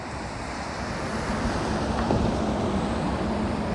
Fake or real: real